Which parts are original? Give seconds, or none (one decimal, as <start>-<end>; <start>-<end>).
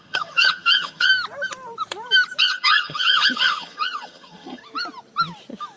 1.1-2.4; 4.6-5.8